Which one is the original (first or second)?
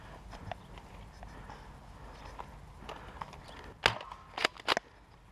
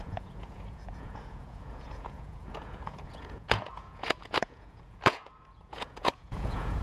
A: first